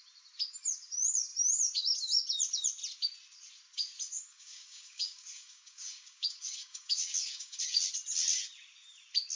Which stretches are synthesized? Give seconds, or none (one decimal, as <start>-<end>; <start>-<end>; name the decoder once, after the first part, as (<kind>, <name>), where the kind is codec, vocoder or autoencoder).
4.3-7.6 (codec, DAC)